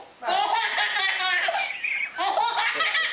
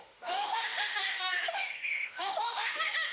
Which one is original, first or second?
first